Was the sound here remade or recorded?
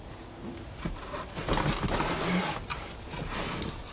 recorded